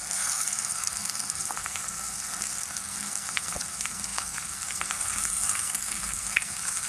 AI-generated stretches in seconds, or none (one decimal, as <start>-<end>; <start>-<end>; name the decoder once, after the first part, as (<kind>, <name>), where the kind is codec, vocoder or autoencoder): 0.0-6.9 (codec, SNAC)